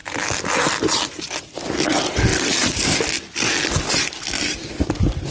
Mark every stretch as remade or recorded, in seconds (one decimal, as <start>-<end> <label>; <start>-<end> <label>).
0.0-5.3 recorded